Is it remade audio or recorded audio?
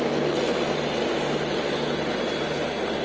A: recorded